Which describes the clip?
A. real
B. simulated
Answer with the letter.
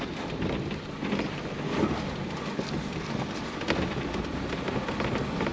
A